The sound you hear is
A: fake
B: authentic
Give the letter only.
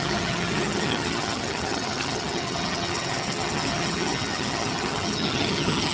A